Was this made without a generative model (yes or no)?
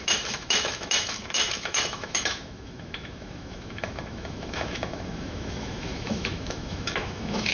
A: no